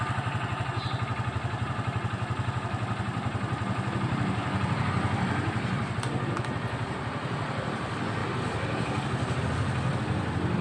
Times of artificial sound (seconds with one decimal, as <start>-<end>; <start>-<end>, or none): none